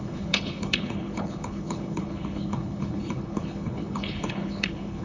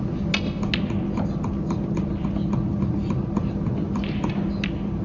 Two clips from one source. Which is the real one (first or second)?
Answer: second